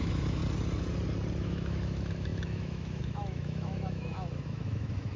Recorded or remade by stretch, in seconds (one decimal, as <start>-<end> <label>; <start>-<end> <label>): 0.0-0.4 remade; 0.4-1.4 recorded; 1.4-5.2 remade